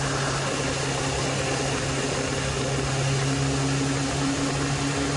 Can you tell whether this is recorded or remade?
recorded